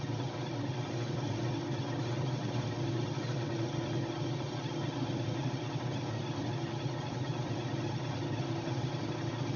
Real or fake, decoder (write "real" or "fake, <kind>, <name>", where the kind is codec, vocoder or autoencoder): real